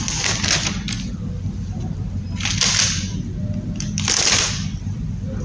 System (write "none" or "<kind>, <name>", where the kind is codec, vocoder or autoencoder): none